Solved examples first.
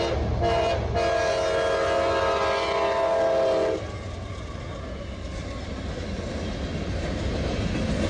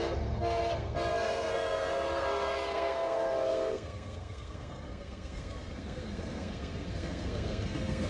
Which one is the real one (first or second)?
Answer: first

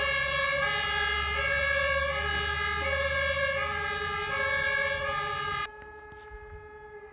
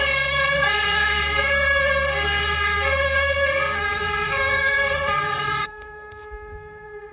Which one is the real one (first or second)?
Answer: first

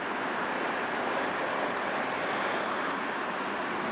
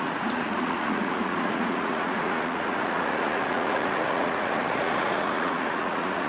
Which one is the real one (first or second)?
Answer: first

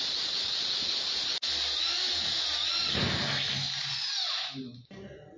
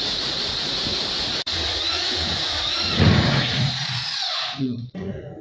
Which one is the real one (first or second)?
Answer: first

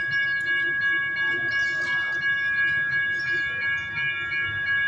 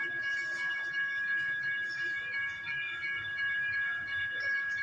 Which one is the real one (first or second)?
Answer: first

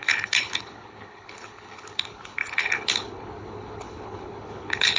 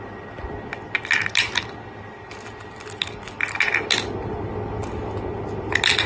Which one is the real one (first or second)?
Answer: second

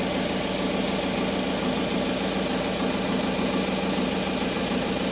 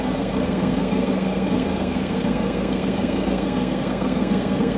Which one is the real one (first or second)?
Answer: first